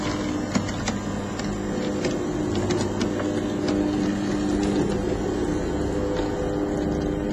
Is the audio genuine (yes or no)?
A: yes